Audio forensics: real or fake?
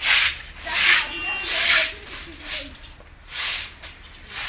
real